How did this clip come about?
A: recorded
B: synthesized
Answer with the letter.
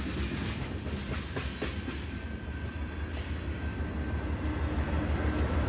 A